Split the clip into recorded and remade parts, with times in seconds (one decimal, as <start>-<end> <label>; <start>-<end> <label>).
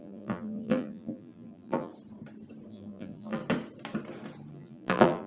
0.0-1.9 remade; 1.9-2.7 recorded; 2.7-3.4 remade; 3.4-4.5 recorded; 4.5-5.3 remade